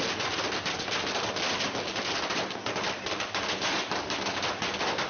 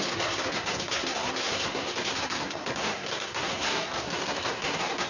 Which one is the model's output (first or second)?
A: second